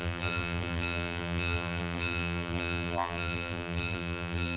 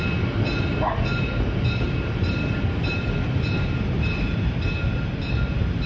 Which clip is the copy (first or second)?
first